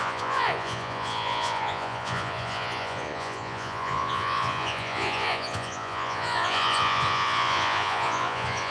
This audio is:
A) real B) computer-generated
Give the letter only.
B